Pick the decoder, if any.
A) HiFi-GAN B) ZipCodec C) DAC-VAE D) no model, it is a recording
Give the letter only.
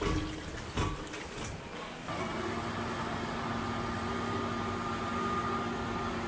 D